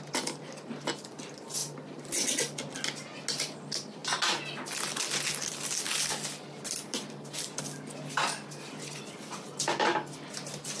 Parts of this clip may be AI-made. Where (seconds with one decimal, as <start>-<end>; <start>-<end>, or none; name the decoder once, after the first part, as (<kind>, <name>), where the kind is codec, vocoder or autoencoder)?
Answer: none